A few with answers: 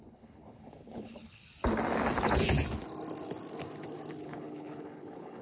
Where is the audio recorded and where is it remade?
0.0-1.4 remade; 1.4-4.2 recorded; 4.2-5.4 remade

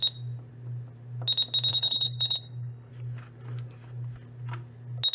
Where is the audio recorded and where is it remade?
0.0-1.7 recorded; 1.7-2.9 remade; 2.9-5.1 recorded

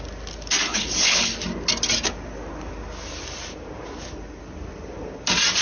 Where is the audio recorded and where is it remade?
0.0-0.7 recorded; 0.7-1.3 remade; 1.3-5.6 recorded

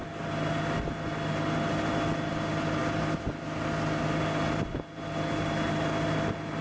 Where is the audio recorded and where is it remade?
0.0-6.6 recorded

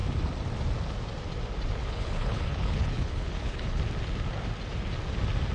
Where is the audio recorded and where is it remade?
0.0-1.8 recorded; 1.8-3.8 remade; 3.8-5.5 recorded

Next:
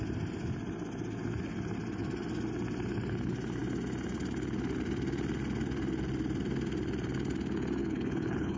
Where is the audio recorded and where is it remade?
0.0-7.8 recorded; 7.8-8.6 remade